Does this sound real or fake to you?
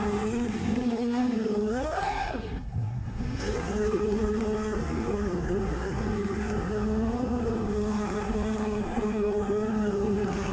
fake